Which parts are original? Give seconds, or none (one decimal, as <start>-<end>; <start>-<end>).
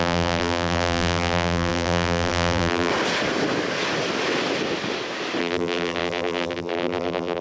2.9-5.4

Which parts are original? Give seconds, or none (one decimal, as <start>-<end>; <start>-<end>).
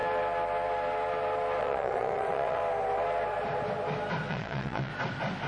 0.0-1.6; 2.6-4.3; 4.9-5.5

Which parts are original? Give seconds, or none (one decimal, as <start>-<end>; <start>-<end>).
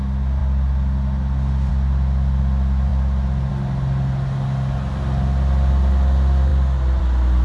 0.0-7.4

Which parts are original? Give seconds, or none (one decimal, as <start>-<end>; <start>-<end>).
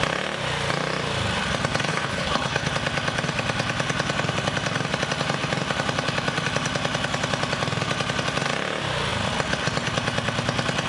0.0-1.9; 2.7-10.9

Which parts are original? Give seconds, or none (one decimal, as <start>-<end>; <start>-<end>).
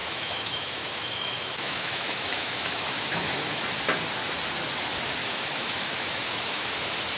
3.6-5.2; 6.7-7.2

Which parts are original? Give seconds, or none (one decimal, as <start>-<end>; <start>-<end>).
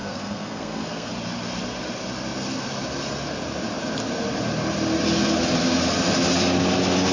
1.1-7.1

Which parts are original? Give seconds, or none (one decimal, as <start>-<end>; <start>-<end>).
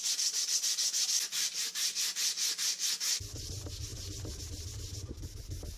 0.0-5.8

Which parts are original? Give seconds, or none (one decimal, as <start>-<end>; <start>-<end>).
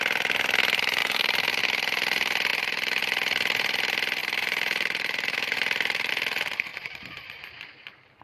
0.0-1.0; 1.6-4.2; 6.1-6.7